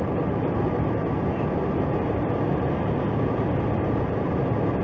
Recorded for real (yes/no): yes